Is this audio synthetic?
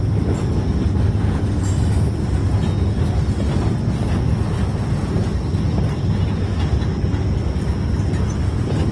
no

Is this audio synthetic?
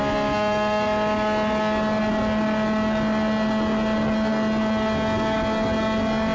no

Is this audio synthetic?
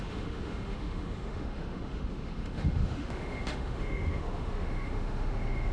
yes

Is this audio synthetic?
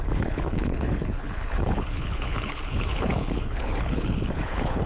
yes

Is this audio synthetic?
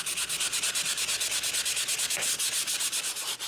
no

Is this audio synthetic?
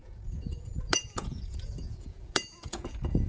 yes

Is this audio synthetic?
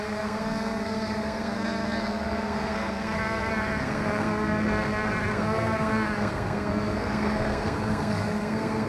yes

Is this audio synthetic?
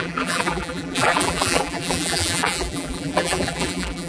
yes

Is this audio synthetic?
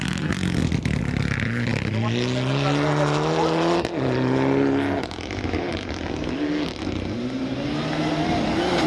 no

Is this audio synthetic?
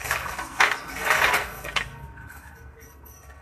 yes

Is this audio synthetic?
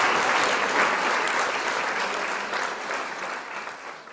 no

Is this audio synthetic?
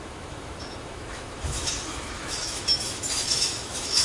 yes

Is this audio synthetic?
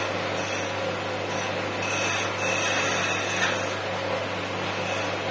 no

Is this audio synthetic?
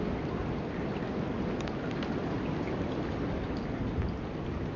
no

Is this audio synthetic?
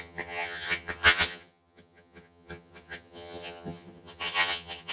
yes